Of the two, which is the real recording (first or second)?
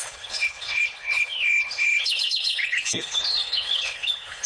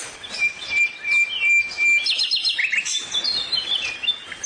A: second